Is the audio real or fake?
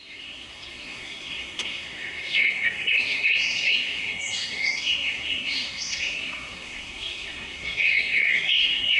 fake